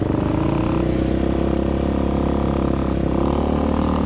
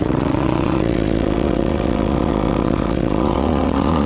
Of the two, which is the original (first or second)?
first